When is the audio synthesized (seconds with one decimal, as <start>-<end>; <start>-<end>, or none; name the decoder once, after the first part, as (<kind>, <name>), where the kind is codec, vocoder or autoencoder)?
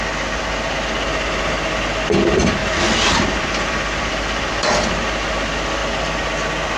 2.6-4.5 (vocoder, BigVGAN v2)